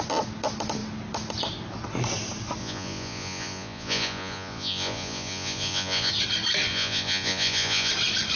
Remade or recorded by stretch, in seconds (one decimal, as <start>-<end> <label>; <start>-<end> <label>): 0.0-2.6 recorded; 2.6-6.1 remade; 6.1-6.7 recorded; 6.7-7.9 remade; 7.9-8.4 recorded